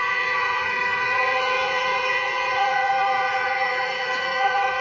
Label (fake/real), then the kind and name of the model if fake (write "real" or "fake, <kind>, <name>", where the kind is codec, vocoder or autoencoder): fake, vocoder, Vocos